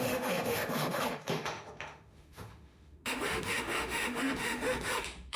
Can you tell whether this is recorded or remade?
remade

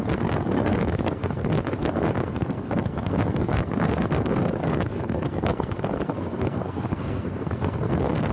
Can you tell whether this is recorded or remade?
remade